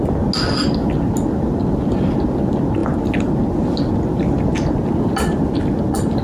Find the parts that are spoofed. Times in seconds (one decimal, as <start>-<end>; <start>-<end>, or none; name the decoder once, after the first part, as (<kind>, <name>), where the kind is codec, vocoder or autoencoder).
none